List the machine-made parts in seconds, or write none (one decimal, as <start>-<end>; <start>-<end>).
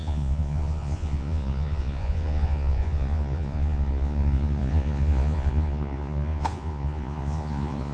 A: 0.0-7.9